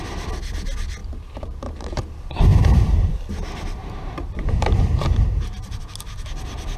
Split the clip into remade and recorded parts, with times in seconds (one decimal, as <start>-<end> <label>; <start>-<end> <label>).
0.0-1.0 recorded; 1.0-2.0 remade; 2.0-2.5 recorded; 2.5-3.1 remade; 3.1-3.8 recorded; 3.8-5.8 remade; 5.8-6.8 recorded